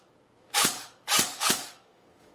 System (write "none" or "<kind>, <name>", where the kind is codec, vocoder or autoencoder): codec, DAC